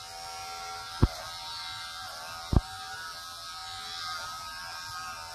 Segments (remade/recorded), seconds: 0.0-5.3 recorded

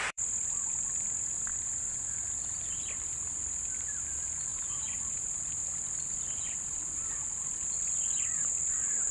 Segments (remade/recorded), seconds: 0.0-1.5 remade; 1.5-2.9 recorded; 2.9-9.1 remade